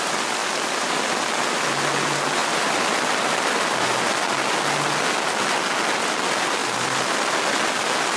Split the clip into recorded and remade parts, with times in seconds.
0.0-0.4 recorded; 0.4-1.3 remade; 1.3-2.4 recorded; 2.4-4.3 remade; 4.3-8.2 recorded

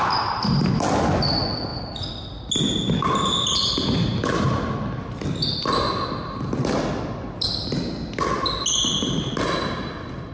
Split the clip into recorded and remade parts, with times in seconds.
0.0-10.3 recorded

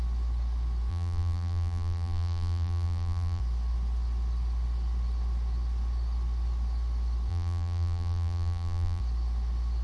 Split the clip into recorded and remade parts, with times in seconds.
0.0-0.9 recorded; 0.9-3.4 remade; 3.4-7.3 recorded; 7.3-9.0 remade; 9.0-9.8 recorded